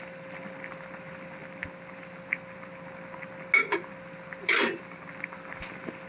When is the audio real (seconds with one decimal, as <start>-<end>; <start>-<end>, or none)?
0.0-6.1